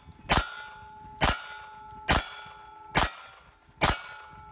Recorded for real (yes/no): yes